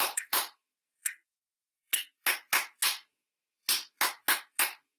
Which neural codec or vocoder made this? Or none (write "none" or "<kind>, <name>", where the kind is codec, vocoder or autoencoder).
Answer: autoencoder, DAC-VAE